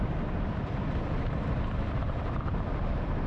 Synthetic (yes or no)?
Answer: yes